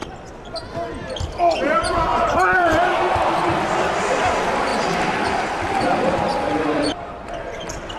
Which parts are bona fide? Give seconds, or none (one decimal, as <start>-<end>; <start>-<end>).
0.0-1.9

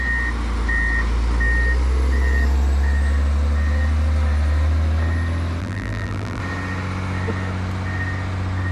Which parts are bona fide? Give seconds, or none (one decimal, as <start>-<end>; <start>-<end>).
0.0-5.6; 6.4-8.7